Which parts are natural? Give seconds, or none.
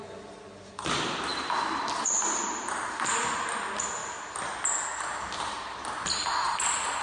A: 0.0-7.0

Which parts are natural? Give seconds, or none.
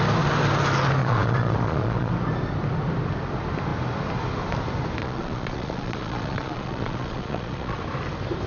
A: 0.0-1.0; 2.1-5.0; 7.8-8.5